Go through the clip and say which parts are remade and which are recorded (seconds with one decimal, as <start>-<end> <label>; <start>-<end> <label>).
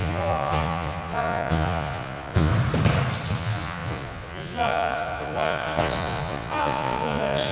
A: 0.0-2.5 remade; 2.5-3.3 recorded; 3.3-7.5 remade